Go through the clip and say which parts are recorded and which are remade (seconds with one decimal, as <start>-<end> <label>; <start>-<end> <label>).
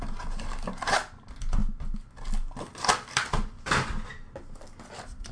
0.0-5.3 recorded